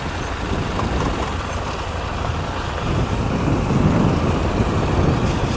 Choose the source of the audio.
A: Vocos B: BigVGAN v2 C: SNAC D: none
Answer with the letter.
D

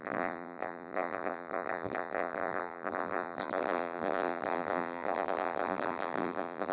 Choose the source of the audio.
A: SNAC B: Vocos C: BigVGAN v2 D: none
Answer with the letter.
C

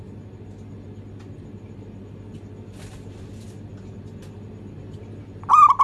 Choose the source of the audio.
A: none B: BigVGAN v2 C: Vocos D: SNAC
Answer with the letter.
A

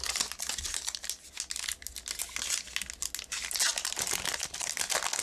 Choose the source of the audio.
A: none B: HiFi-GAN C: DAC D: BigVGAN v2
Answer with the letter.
A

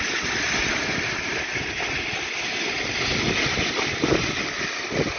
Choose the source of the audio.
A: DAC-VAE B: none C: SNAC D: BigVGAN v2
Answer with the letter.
B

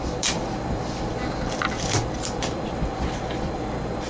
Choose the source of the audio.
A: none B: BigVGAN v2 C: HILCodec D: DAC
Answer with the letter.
B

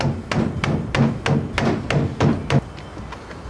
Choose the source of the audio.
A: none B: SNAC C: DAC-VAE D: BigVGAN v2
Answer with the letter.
A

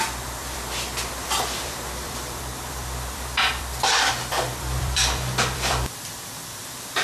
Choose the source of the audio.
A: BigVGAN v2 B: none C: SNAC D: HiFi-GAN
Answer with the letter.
A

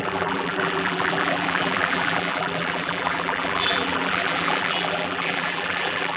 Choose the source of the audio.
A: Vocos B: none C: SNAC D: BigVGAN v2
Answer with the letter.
D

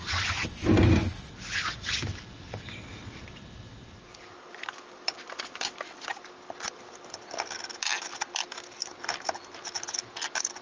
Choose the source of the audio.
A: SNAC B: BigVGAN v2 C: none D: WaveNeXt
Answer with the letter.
C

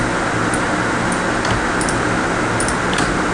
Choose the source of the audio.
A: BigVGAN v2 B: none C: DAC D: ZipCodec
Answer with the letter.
B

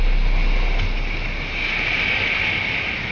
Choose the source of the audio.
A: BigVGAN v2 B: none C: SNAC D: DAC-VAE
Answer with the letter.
B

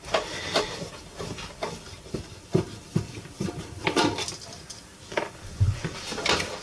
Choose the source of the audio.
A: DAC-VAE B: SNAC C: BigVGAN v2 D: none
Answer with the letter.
D